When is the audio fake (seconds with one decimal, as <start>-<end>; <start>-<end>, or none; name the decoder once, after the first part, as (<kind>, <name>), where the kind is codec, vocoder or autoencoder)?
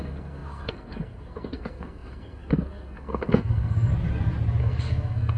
0.0-3.9 (codec, SNAC); 4.6-5.4